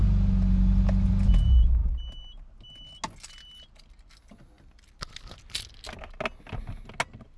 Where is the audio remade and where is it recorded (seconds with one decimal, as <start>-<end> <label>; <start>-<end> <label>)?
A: 0.0-7.4 recorded